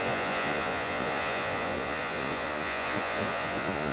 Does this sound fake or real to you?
fake